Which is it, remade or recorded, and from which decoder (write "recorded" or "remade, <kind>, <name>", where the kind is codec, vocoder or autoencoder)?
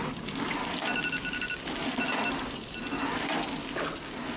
recorded